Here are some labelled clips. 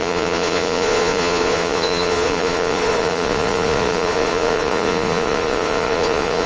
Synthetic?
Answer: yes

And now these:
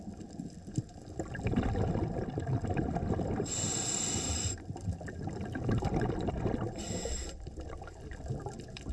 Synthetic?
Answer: yes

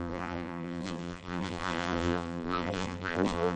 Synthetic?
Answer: yes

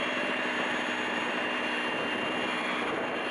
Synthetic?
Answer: no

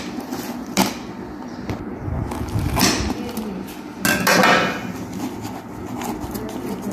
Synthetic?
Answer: no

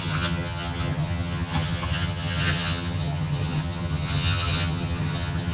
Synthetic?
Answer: yes